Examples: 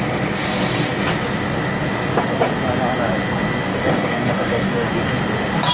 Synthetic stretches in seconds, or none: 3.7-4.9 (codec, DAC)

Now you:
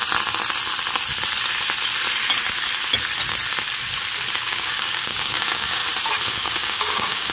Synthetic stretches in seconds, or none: 4.4-5.8 (codec, DAC); 6.3-7.3